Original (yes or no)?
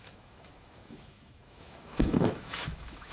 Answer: no